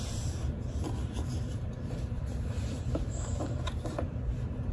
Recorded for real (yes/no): no